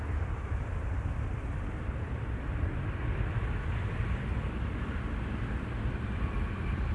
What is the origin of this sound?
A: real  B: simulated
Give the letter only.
A